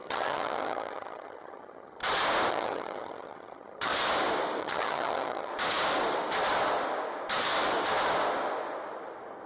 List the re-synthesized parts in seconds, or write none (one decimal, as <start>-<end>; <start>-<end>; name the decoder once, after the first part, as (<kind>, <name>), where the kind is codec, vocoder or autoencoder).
0.0-2.0 (vocoder, HiFi-GAN); 2.5-3.9; 4.6-5.5